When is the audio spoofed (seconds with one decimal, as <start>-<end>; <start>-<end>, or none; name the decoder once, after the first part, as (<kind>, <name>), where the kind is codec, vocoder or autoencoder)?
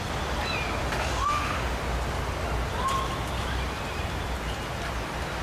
0.8-1.8 (autoencoder, DAC-VAE)